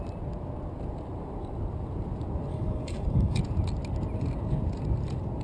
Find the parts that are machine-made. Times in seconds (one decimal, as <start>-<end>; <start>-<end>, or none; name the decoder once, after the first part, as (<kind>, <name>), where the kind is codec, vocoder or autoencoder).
2.5-3.4 (codec, DAC)